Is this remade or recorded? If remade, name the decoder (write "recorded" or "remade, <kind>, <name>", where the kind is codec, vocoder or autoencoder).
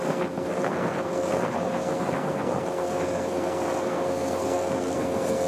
remade, codec, SNAC